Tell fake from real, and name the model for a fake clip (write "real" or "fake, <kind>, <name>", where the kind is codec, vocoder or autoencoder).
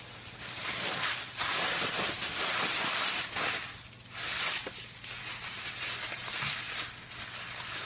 real